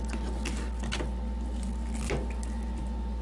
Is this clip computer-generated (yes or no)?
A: no